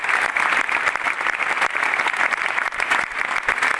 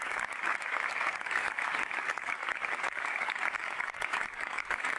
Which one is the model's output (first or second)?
second